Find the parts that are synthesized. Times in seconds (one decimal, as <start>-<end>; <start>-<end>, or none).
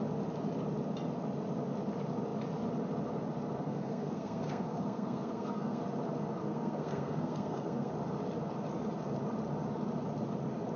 3.6-5.8; 6.4-7.9